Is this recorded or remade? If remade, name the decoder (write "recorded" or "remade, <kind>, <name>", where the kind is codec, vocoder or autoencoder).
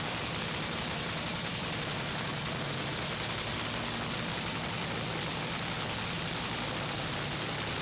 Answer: recorded